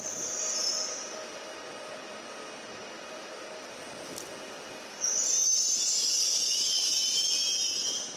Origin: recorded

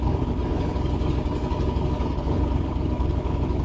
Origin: remade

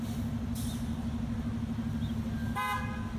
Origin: recorded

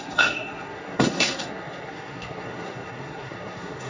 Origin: remade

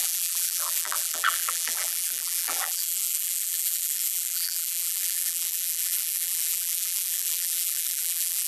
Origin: remade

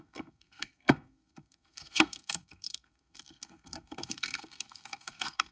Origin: remade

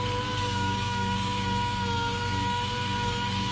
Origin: remade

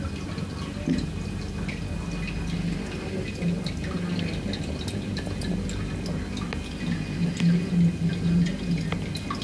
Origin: recorded